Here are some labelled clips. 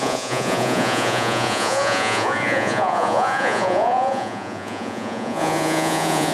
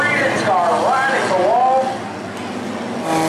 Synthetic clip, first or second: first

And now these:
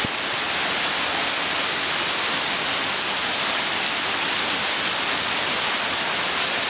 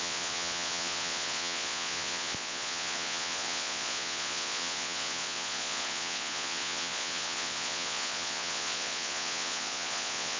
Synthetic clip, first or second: second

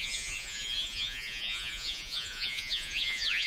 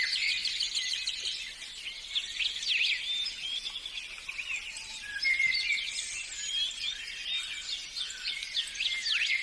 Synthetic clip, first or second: first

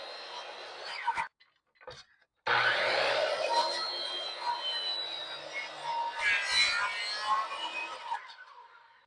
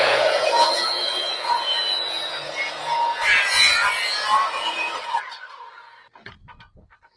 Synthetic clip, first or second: second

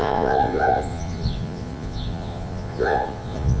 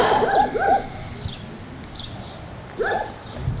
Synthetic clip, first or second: first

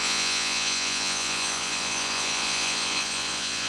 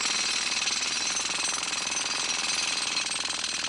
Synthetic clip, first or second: first